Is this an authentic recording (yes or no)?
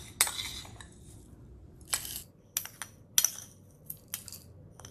yes